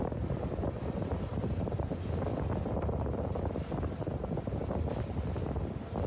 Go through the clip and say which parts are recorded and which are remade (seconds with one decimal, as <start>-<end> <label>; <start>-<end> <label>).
0.0-1.3 recorded; 1.3-1.9 remade; 1.9-6.1 recorded